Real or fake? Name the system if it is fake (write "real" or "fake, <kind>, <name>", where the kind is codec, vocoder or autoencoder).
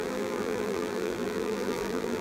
fake, vocoder, BigVGAN v2